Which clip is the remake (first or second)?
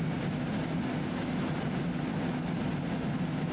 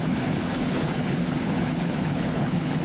second